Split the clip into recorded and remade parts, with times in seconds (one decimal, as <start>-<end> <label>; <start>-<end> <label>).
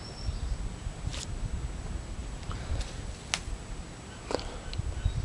0.0-2.2 recorded; 2.2-2.7 remade; 2.7-5.2 recorded